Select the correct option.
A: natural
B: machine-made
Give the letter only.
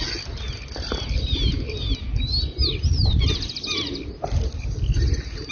A